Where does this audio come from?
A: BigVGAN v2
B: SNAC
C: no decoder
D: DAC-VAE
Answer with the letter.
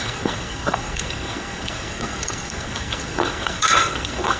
B